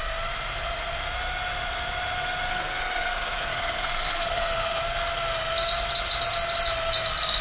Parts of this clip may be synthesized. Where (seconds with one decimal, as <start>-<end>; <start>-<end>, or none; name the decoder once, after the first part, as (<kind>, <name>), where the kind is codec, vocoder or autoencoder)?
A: 2.5-4.8 (codec, SNAC)